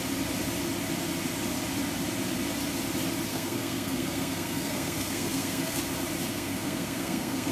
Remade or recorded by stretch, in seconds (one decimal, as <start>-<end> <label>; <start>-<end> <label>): 0.0-3.3 recorded; 3.3-5.8 remade; 5.8-6.3 recorded; 6.3-7.5 remade